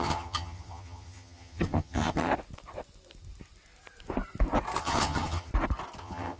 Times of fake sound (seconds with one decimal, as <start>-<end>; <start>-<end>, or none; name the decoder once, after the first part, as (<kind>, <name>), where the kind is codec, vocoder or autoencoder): 0.0-2.3 (vocoder, HiFi-GAN); 4.8-5.5; 6.0-6.4